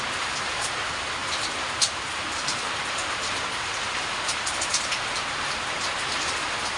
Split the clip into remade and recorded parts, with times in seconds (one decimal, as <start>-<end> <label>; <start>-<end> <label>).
0.0-6.8 remade